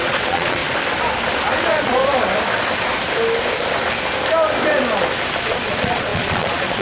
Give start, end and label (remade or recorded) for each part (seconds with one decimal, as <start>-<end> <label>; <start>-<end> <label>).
0.0-0.6 remade; 0.6-1.6 recorded; 1.6-2.0 remade; 2.0-5.4 recorded; 5.4-6.8 remade